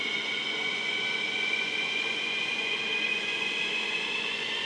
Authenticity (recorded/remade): remade